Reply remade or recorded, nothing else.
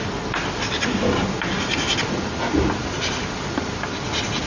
recorded